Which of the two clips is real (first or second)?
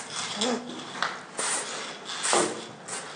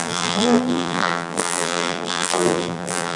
first